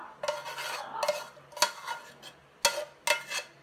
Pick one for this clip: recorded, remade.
recorded